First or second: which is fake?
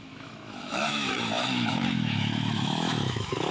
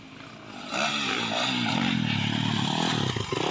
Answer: first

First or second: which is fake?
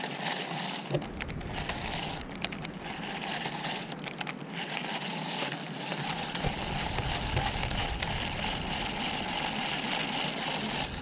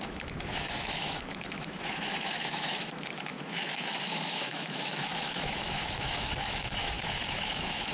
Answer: second